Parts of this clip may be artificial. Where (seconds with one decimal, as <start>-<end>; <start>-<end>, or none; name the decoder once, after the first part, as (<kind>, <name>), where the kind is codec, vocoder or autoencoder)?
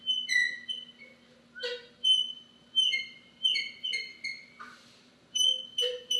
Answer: none